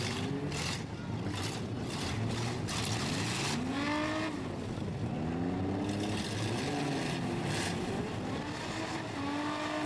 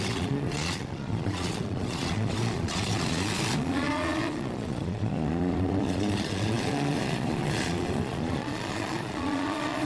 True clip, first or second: first